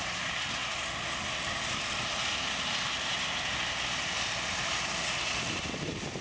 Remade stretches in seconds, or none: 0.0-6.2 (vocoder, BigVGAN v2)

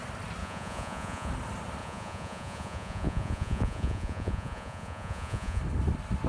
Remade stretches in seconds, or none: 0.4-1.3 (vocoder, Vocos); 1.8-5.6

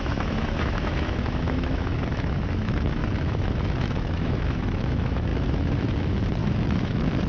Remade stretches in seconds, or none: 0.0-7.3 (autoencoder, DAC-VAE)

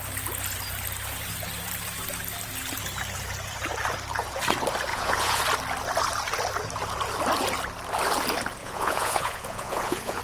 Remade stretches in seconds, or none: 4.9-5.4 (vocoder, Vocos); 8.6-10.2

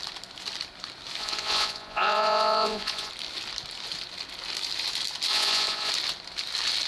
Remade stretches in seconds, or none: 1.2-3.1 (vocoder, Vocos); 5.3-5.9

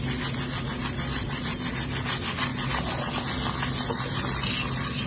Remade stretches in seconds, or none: none